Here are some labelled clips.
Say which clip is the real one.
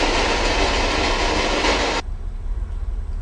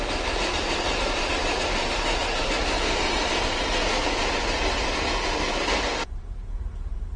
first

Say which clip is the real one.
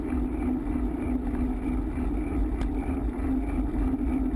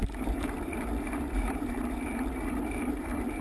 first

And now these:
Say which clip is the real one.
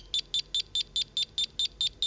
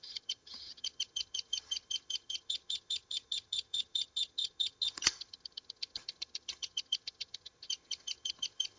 first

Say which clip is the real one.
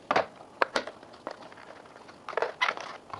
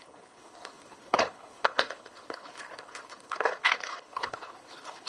first